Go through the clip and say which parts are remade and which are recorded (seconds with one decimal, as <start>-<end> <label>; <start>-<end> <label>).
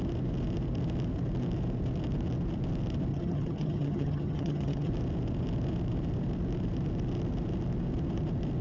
0.0-3.1 recorded; 3.1-4.9 remade; 4.9-8.6 recorded